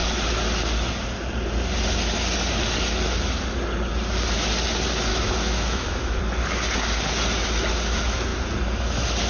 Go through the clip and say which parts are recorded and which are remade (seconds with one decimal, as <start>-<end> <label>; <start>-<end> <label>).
0.0-5.1 recorded; 5.1-6.2 remade; 6.2-9.3 recorded